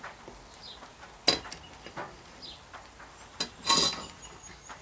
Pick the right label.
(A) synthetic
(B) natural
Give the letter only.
B